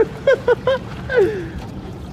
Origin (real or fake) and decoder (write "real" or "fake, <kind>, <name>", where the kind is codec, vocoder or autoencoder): fake, vocoder, Vocos